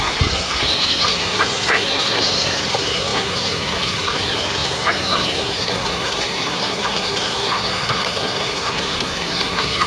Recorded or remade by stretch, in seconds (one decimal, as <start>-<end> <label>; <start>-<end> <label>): 0.0-9.9 remade